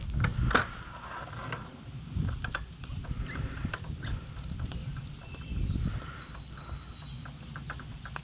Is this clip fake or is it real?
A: real